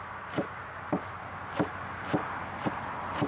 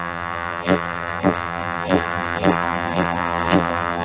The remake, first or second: second